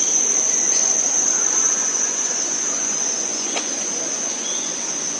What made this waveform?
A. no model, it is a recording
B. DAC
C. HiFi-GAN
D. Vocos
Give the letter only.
D